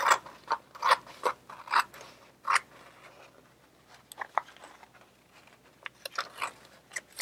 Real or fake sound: real